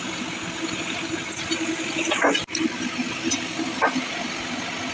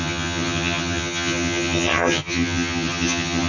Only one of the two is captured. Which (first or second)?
first